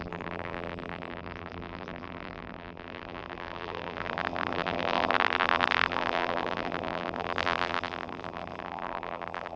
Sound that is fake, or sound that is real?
fake